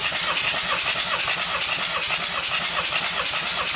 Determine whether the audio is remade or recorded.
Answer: recorded